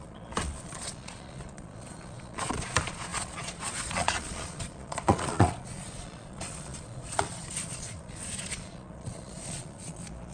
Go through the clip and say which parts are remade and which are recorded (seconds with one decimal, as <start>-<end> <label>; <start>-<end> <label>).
0.0-10.3 remade